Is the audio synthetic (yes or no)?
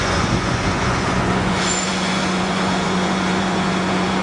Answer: yes